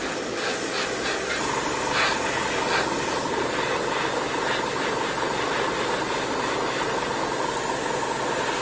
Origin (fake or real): real